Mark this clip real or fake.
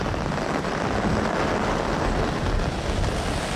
real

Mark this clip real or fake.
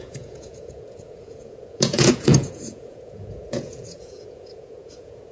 fake